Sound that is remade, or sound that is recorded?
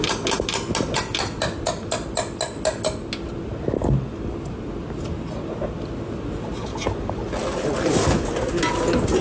recorded